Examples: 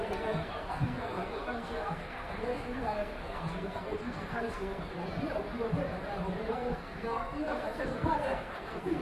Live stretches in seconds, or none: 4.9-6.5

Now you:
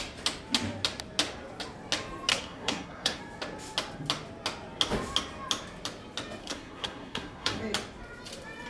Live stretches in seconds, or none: 0.0-2.3; 3.2-6.4; 7.6-8.7

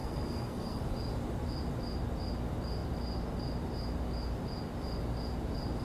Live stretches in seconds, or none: 0.8-5.8

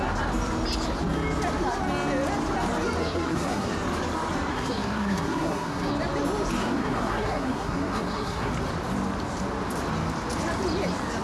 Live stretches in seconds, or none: 0.0-3.0; 3.7-4.5; 5.9-6.6; 8.5-11.2

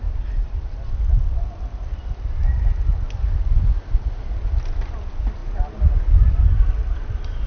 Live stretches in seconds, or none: 0.0-7.5

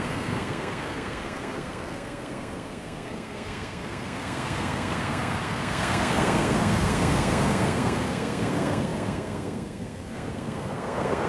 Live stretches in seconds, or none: none